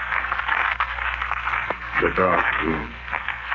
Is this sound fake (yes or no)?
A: yes